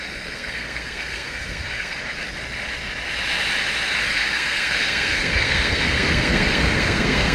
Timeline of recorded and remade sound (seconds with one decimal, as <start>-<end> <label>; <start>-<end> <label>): 0.0-2.0 remade; 2.0-4.1 recorded; 4.1-7.3 remade